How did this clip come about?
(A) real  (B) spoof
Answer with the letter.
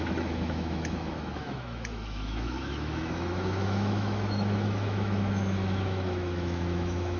B